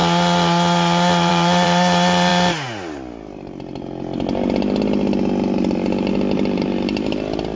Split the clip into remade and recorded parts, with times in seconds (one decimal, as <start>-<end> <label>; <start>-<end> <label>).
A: 0.0-1.3 recorded; 1.3-2.3 remade; 2.3-6.1 recorded; 6.1-7.5 remade